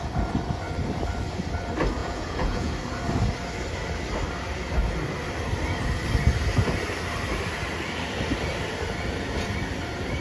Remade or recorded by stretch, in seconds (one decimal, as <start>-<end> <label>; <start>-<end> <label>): 0.0-2.0 recorded; 2.0-2.7 remade; 2.7-10.2 recorded